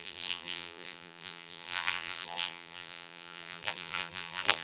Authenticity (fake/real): fake